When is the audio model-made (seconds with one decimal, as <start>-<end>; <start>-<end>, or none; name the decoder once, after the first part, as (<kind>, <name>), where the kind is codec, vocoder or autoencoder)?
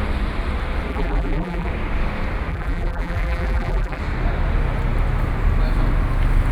0.9-1.7 (vocoder, BigVGAN v2); 2.5-4.0